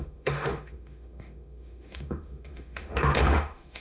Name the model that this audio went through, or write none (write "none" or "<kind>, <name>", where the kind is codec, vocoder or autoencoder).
autoencoder, DAC-VAE